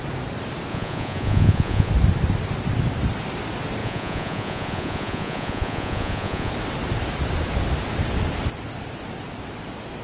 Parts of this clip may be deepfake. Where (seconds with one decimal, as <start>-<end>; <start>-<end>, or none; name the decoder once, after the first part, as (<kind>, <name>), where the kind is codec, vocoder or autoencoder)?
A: 0.7-1.9 (vocoder, Vocos); 3.8-6.5